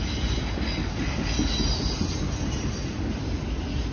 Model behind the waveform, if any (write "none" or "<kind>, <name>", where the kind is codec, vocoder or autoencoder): none